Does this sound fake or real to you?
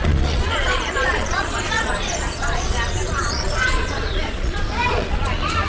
fake